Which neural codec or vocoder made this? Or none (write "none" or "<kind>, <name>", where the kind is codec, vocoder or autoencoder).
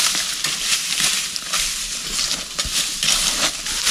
none